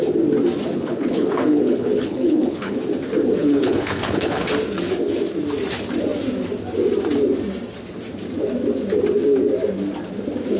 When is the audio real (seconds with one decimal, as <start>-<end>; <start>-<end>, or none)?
0.0-0.7; 2.8-3.4; 4.4-10.6

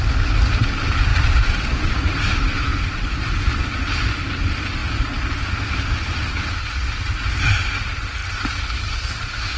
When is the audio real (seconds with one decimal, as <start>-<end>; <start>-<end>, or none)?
0.0-1.1; 3.3-9.6

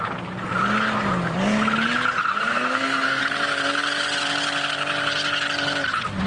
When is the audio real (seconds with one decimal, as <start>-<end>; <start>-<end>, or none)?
0.0-2.5; 3.2-6.3

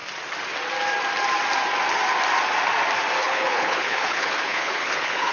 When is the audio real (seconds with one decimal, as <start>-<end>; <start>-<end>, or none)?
0.0-3.2

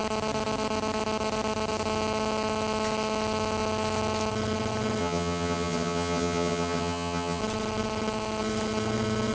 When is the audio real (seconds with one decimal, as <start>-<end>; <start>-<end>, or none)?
0.0-5.0; 7.4-9.3

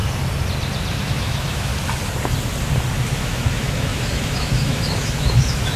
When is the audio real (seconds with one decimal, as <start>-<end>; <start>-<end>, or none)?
0.0-1.0; 1.7-3.1

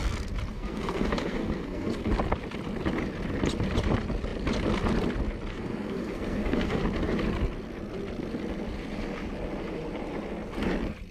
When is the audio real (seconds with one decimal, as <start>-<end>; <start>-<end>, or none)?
0.0-0.5; 2.1-5.5; 6.8-11.1

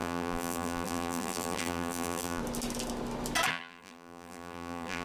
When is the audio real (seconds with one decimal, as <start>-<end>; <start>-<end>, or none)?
2.4-3.5